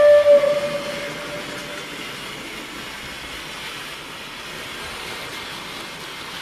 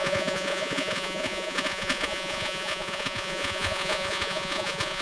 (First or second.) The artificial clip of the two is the second